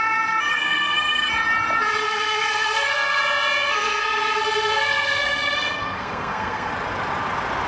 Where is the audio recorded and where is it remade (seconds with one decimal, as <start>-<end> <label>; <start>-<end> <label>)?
0.0-0.5 recorded; 0.5-1.3 remade; 1.3-2.0 recorded; 2.0-3.2 remade; 3.2-3.7 recorded; 3.7-6.7 remade; 6.7-7.7 recorded